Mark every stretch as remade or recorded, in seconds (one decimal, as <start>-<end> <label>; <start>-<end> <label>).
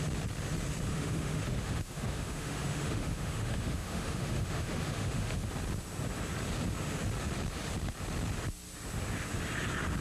0.0-0.9 recorded; 0.9-5.5 remade; 5.5-10.0 recorded